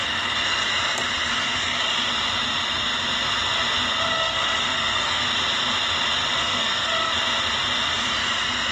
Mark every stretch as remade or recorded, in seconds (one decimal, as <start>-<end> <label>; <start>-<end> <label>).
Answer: 0.0-0.7 remade; 0.7-4.0 recorded; 4.0-5.2 remade; 5.2-6.4 recorded; 6.4-7.1 remade; 7.1-8.7 recorded